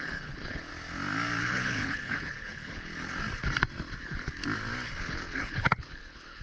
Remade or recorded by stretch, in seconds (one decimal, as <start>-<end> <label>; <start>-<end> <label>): 0.0-0.7 remade; 0.7-1.4 recorded; 1.4-2.9 remade; 2.9-4.0 recorded; 4.0-4.4 remade; 4.4-5.0 recorded; 5.0-6.4 remade